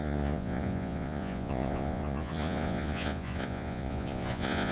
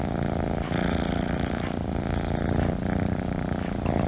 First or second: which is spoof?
first